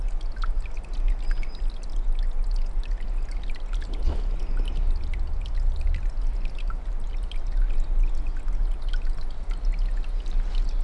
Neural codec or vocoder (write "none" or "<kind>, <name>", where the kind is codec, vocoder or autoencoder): none